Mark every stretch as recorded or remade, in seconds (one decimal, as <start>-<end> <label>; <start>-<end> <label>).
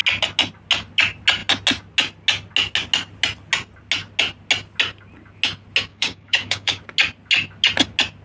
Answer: 0.0-5.9 recorded; 5.9-6.8 remade; 6.8-8.2 recorded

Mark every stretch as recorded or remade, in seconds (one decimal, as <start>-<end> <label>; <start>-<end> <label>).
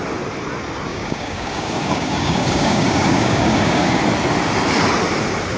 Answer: 0.0-0.9 recorded; 0.9-4.0 remade; 4.0-5.6 recorded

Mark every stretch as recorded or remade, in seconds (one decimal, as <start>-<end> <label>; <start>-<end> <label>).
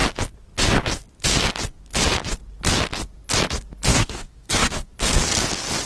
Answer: 0.0-3.9 recorded; 3.9-4.9 remade; 4.9-5.9 recorded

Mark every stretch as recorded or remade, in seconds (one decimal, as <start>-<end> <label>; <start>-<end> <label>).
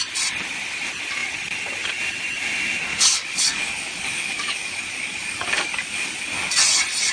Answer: 0.0-2.9 recorded; 2.9-6.3 remade; 6.3-7.1 recorded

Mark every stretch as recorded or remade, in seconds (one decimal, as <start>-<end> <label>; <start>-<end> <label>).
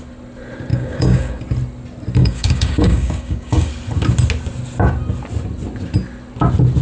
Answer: 0.0-0.7 recorded; 0.7-1.4 remade; 1.4-2.2 recorded; 2.2-3.7 remade; 3.7-6.8 recorded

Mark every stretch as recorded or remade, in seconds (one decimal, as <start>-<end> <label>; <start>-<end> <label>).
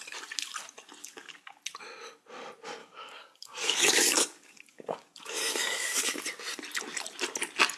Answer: 0.0-1.0 recorded; 1.0-1.6 remade; 1.6-2.8 recorded; 2.8-6.2 remade; 6.2-7.8 recorded